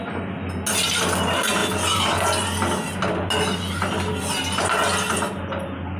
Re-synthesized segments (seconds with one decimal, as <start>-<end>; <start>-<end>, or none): none